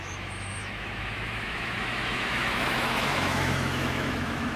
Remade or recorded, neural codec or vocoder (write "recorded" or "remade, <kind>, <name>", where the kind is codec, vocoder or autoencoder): remade, autoencoder, DAC-VAE